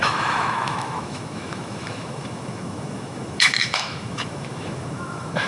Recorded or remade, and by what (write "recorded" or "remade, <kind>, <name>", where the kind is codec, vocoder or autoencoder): remade, autoencoder, DAC-VAE